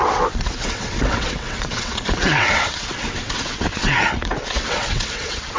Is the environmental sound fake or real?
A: fake